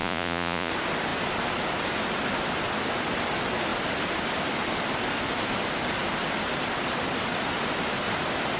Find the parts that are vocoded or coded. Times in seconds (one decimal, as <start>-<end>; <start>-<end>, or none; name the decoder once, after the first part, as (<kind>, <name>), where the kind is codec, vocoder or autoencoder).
0.0-0.7 (vocoder, Vocos)